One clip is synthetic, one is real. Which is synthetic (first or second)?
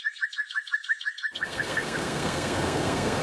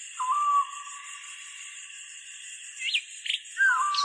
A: first